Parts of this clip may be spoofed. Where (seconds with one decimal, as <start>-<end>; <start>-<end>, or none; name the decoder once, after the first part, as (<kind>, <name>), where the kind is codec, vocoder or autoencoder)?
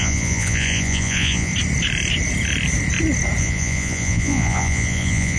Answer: 0.0-1.5 (vocoder, Vocos); 3.4-5.4